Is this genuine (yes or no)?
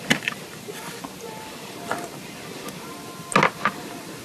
yes